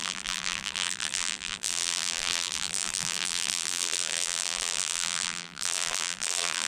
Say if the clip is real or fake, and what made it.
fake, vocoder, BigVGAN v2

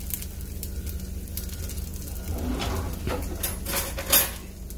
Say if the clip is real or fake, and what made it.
real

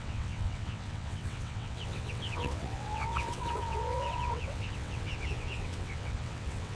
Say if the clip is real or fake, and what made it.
fake, vocoder, WaveNeXt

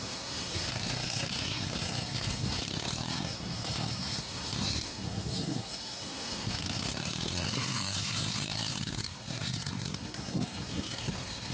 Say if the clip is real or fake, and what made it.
fake, codec, SNAC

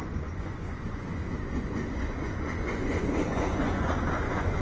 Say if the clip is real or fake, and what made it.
fake, vocoder, Vocos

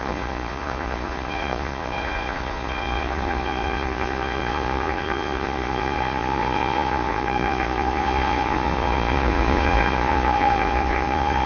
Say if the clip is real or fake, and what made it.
fake, vocoder, Vocos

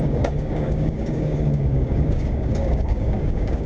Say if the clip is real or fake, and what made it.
fake, codec, DAC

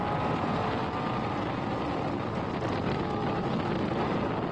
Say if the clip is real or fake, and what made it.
real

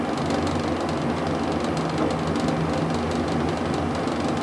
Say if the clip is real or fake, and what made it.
real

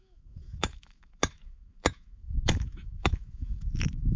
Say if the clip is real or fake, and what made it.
fake, autoencoder, DAC-VAE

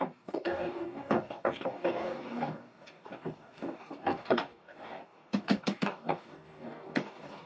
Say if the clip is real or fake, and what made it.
fake, codec, DAC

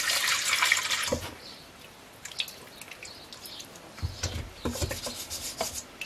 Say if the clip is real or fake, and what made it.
real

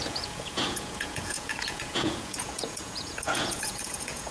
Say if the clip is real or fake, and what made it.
fake, vocoder, Vocos